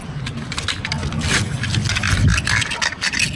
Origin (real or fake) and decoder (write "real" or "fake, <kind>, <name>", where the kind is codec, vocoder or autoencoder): real